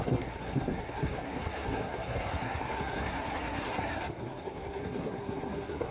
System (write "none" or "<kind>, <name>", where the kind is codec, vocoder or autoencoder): codec, SNAC